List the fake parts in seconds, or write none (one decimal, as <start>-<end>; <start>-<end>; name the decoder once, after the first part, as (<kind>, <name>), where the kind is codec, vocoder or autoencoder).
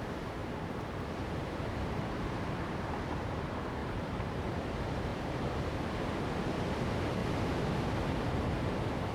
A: 0.4-2.2 (vocoder, BigVGAN v2); 3.8-4.5; 5.1-5.8